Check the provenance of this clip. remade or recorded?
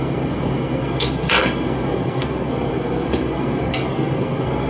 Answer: remade